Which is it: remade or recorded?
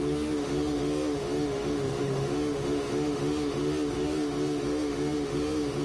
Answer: remade